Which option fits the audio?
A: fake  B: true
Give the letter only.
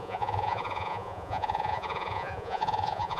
A